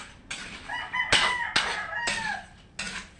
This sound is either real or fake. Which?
real